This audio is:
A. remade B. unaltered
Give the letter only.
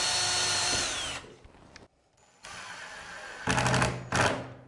B